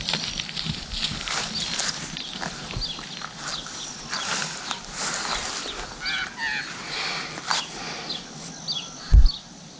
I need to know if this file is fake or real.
real